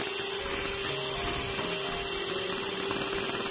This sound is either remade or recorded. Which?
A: recorded